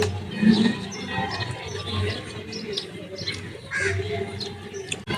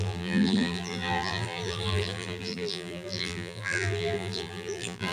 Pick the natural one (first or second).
first